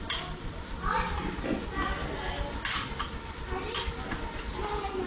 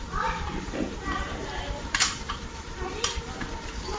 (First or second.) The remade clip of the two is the second